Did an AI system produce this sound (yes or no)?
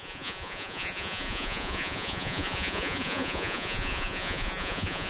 yes